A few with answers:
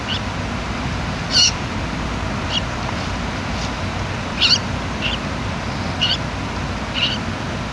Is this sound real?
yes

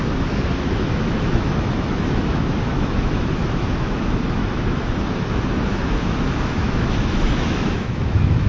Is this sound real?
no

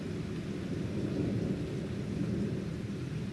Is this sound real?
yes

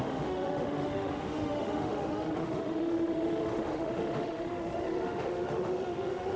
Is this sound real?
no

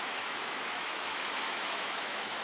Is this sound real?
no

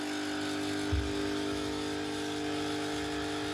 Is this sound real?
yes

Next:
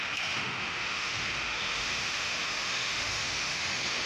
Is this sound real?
no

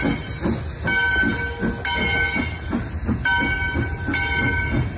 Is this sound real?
yes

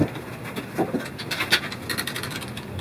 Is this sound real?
yes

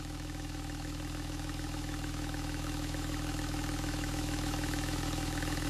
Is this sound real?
no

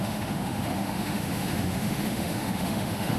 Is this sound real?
no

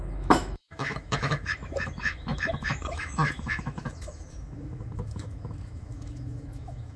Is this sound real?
no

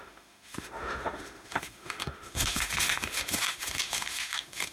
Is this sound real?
no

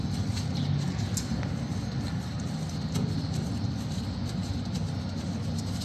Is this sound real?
yes